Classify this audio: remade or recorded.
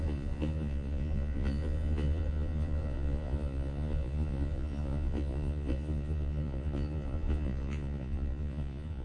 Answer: remade